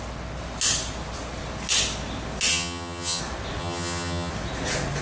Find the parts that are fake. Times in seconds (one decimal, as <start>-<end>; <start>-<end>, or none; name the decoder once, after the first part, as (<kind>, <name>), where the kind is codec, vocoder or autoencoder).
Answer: 2.5-3.2 (vocoder, HiFi-GAN); 3.6-4.3